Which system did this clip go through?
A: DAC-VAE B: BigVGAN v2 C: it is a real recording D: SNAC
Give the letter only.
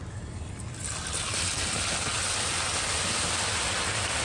C